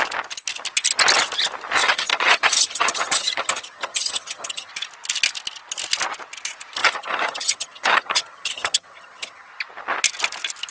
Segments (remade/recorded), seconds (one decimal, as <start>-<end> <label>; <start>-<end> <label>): 0.0-1.8 recorded; 1.8-4.7 remade; 4.7-6.8 recorded; 6.8-9.5 remade; 9.5-10.7 recorded